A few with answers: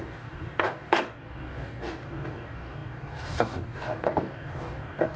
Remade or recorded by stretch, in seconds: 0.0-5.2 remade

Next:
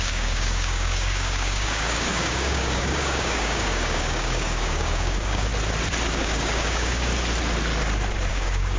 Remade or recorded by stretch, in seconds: 0.0-5.5 remade; 5.5-6.1 recorded; 6.1-7.1 remade; 7.1-8.3 recorded; 8.3-8.8 remade